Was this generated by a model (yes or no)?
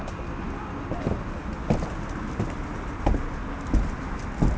no